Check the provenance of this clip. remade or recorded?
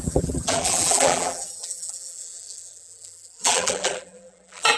remade